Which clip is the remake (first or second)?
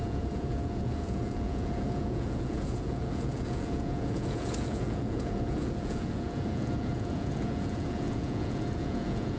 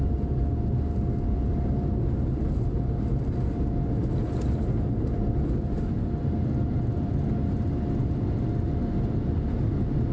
first